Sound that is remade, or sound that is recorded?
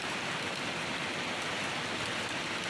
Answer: recorded